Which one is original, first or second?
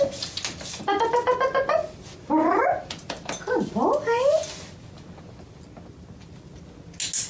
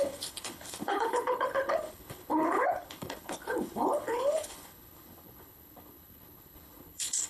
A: first